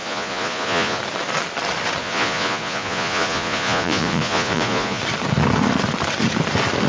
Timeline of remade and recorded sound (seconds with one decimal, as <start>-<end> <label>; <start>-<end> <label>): 0.0-1.0 remade; 1.0-2.0 recorded; 2.0-5.0 remade; 5.0-6.9 recorded